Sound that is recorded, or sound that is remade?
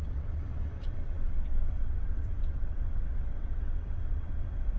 remade